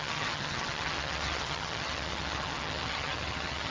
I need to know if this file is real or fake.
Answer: fake